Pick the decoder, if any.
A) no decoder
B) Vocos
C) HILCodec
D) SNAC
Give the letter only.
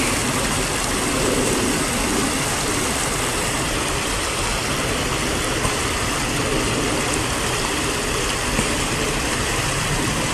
A